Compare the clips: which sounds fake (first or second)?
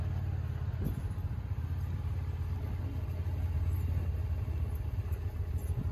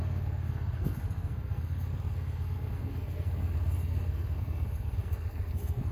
second